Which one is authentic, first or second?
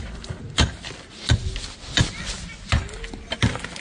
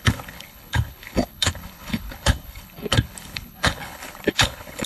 first